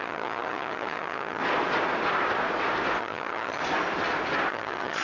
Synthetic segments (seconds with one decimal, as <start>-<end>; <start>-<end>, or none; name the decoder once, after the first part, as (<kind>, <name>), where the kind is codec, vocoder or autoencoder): 0.0-1.4 (vocoder, HiFi-GAN); 3.0-3.6; 4.5-5.0